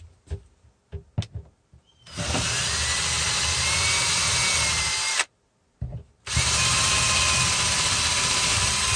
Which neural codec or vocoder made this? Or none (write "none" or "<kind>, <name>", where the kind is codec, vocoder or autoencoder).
none